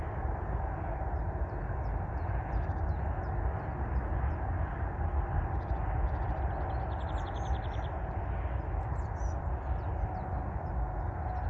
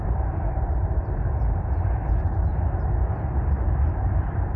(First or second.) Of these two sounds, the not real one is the second